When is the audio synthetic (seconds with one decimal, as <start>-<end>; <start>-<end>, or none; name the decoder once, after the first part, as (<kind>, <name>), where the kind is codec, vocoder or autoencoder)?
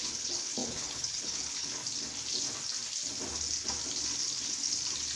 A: 0.0-1.8 (codec, HILCodec)